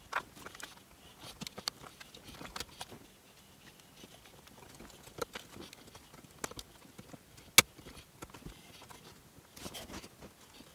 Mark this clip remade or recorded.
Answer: recorded